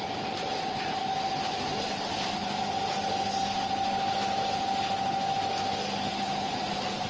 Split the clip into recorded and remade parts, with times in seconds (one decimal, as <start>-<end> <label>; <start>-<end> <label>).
0.0-7.1 recorded